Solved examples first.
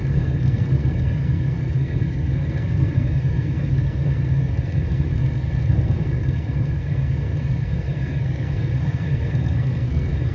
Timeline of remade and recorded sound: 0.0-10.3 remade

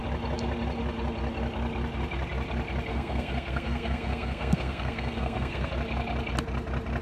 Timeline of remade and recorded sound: 0.0-2.9 recorded; 2.9-5.7 remade; 5.7-7.0 recorded